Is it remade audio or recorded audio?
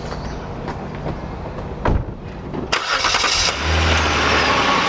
recorded